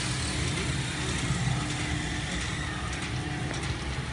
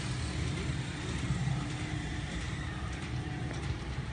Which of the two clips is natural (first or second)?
first